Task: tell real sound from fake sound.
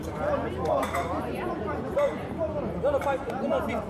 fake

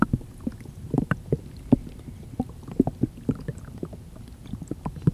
fake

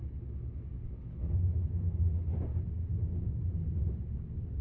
real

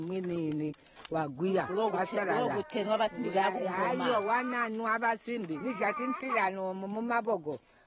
fake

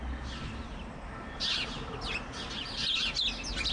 real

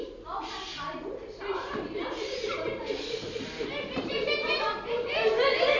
fake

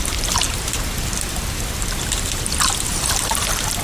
real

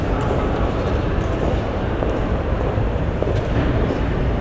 fake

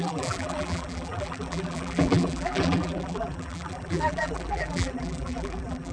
fake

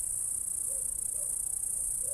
real